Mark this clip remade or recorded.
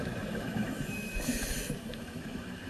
remade